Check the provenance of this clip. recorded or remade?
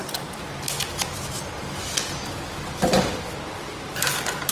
recorded